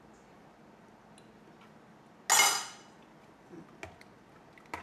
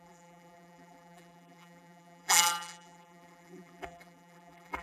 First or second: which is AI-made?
second